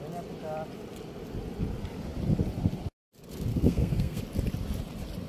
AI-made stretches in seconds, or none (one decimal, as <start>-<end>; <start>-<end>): 3.5-4.2